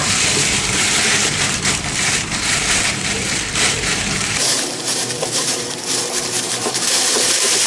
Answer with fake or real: fake